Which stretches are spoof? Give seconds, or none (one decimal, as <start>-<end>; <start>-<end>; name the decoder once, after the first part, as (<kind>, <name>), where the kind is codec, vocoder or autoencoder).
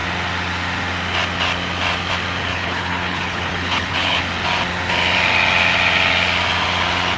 2.5-4.2 (codec, HILCodec)